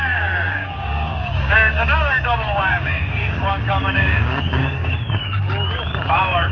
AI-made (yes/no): yes